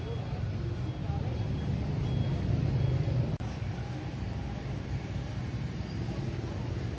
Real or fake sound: real